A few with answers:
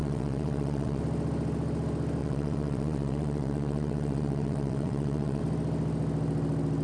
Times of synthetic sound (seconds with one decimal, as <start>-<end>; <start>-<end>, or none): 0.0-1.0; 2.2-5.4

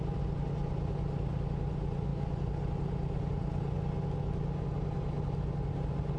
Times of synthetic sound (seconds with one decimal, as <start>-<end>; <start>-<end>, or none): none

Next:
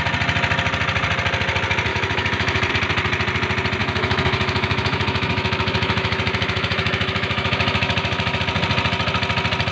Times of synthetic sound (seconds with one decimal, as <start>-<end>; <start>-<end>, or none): 1.9-2.7; 3.8-8.4

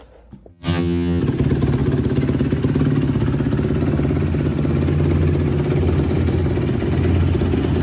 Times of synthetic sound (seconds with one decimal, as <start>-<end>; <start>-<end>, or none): 0.5-1.2